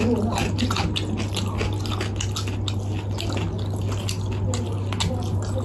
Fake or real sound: real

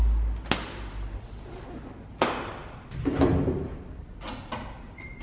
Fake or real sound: real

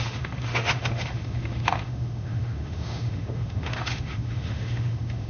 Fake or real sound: fake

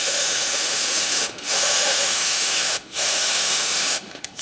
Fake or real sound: fake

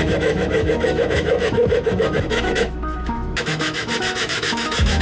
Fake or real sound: fake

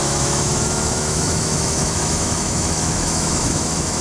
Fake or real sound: fake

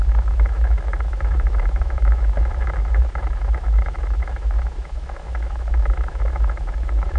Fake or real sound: fake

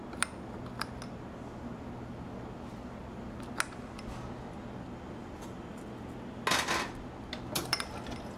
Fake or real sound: real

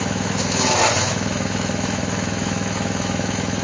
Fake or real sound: fake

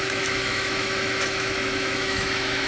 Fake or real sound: fake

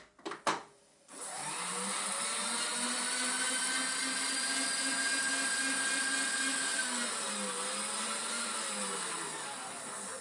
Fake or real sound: real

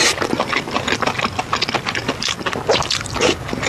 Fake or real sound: real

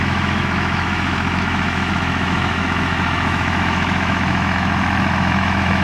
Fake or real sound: fake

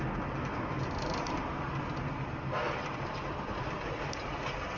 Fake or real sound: real